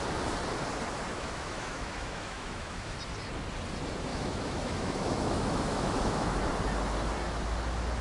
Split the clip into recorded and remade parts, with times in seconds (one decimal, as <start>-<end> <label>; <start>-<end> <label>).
0.0-1.1 recorded; 1.1-3.0 remade; 3.0-4.1 recorded; 4.1-6.4 remade; 6.4-8.0 recorded